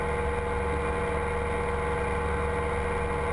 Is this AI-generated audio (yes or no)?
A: no